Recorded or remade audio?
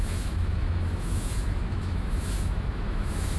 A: remade